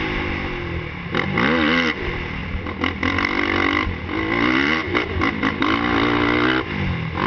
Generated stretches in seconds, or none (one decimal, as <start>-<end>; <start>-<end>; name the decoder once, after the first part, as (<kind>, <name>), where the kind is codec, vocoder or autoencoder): none